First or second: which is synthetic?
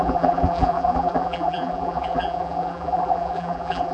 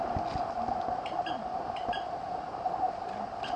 first